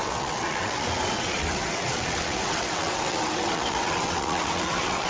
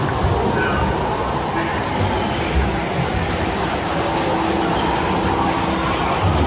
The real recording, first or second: second